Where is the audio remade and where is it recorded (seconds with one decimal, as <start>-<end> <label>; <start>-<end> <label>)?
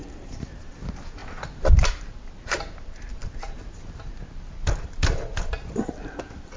0.0-6.6 remade